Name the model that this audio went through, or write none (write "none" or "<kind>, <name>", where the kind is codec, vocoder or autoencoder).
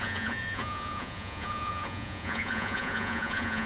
vocoder, Vocos